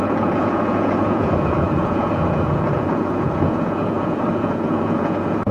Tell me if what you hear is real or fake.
fake